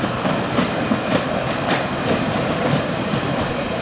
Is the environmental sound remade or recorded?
remade